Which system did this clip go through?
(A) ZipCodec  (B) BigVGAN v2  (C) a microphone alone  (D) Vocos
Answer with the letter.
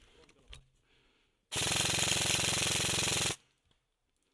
C